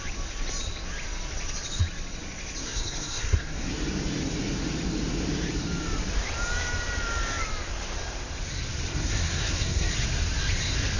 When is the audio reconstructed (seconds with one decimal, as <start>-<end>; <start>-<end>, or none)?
2.6-3.7; 8.9-9.9